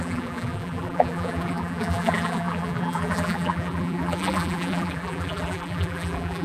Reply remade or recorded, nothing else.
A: remade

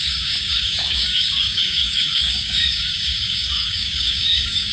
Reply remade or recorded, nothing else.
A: remade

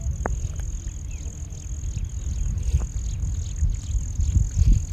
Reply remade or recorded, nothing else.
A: recorded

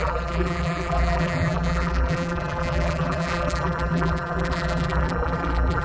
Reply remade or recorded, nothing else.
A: remade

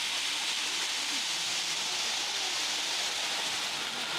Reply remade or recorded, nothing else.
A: recorded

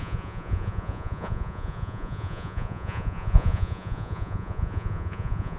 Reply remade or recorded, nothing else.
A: remade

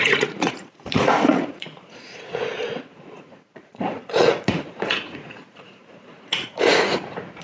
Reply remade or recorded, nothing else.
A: remade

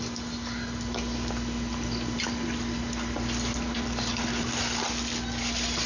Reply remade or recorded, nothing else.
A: recorded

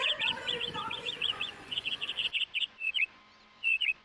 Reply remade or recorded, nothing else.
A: remade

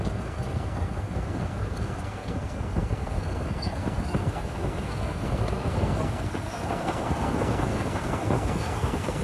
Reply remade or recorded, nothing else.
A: remade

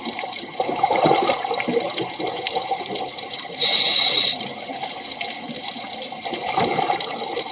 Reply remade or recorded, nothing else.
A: recorded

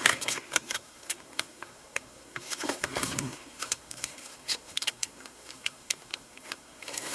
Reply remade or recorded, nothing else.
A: remade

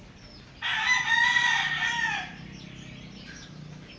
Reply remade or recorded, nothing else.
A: recorded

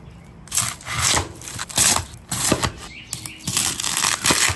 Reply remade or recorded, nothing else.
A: recorded